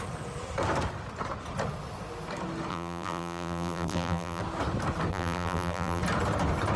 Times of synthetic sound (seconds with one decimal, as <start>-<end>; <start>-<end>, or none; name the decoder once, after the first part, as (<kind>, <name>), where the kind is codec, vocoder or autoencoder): 2.7-4.4 (vocoder, BigVGAN v2); 5.1-6.0